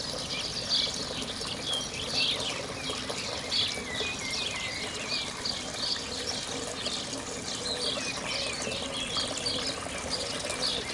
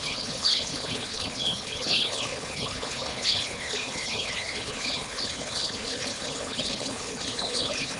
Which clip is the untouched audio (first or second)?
first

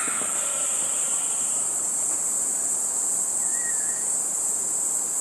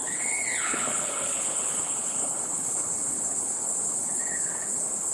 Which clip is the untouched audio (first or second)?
first